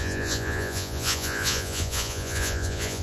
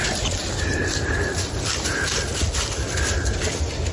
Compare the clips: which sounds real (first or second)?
second